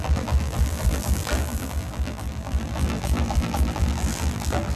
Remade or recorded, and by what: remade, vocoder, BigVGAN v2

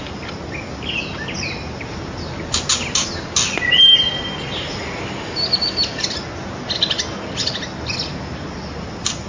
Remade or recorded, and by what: recorded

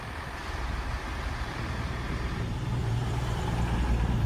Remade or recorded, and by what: remade, vocoder, BigVGAN v2